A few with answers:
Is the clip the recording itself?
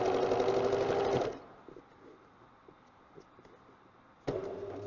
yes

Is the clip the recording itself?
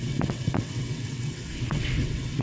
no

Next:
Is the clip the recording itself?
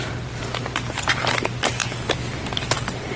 yes